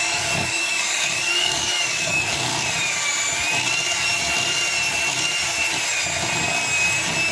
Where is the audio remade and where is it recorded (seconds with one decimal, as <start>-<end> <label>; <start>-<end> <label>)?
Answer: 0.0-2.5 remade; 2.5-7.3 recorded